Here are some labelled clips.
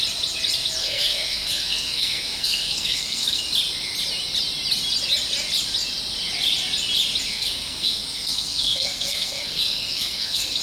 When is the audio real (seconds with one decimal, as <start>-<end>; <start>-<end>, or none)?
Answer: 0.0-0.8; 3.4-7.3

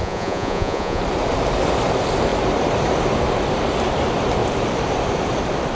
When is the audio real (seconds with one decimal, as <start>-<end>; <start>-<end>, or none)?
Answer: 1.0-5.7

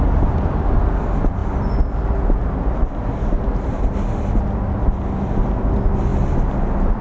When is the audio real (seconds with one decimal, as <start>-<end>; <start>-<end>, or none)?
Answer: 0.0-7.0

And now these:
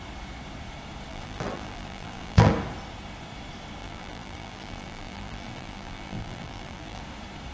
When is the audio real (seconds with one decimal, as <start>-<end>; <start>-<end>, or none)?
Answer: 0.0-1.1; 2.5-3.8; 7.0-7.5